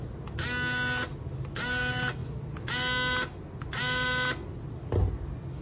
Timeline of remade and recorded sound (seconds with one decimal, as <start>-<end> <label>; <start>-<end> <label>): 0.0-5.6 recorded

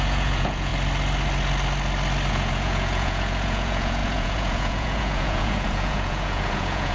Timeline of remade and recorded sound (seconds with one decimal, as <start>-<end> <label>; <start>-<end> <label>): 0.0-0.7 remade; 0.7-2.3 recorded; 2.3-6.9 remade